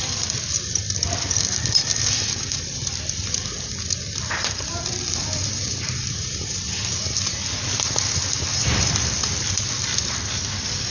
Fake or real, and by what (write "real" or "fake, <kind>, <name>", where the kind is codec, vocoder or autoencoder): fake, vocoder, BigVGAN v2